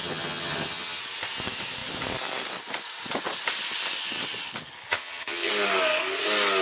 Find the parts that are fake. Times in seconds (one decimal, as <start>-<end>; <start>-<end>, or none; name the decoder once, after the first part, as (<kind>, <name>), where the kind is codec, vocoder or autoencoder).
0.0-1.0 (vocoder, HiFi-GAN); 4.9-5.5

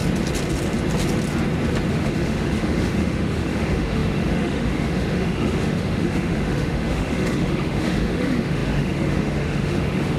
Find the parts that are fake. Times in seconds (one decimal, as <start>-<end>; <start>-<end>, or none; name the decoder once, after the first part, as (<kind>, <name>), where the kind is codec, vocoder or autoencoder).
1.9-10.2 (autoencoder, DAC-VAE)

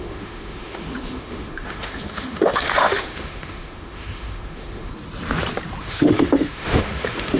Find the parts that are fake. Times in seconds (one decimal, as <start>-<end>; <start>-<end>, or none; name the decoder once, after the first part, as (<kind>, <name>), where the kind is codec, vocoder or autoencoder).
0.0-4.9 (autoencoder, DAC-VAE); 5.8-7.4

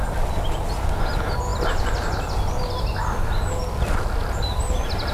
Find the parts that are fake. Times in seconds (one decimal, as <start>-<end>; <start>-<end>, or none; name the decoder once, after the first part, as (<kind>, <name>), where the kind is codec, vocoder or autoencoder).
none